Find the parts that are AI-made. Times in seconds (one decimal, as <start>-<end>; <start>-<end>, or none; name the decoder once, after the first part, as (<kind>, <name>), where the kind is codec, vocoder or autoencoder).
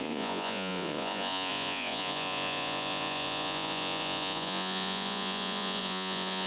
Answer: 0.0-6.5 (vocoder, Vocos)